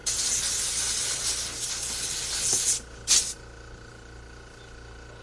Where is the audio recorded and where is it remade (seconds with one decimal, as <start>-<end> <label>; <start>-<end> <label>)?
0.0-5.2 recorded